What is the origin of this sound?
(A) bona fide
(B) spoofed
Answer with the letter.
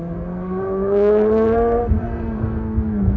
B